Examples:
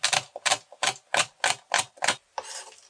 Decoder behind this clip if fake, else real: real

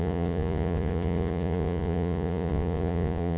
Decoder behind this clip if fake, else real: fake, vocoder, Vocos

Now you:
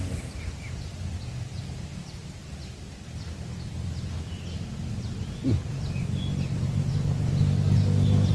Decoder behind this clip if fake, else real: real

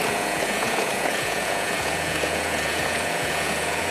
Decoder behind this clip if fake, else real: fake, vocoder, Vocos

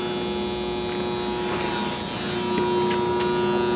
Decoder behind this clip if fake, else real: real